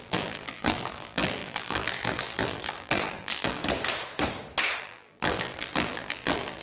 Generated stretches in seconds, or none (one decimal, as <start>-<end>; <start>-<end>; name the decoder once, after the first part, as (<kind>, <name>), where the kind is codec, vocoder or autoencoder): 0.0-3.6 (vocoder, BigVGAN v2); 4.8-6.6